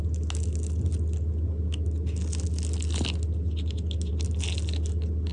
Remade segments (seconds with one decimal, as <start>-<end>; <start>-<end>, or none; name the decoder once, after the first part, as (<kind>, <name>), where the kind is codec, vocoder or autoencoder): none